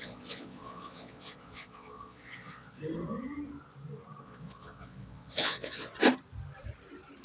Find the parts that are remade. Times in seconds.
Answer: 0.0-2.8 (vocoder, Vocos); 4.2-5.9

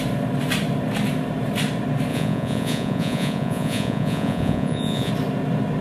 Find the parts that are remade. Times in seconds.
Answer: 2.1-5.1 (vocoder, Vocos)

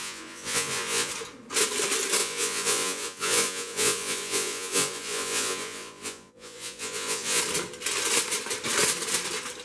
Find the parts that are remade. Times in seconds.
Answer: 0.0-1.1 (vocoder, Vocos); 2.2-7.4